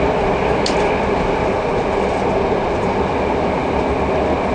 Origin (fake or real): real